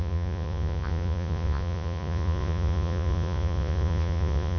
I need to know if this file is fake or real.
fake